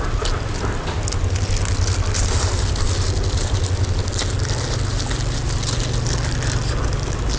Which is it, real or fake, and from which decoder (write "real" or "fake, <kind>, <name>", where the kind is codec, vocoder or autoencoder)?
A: real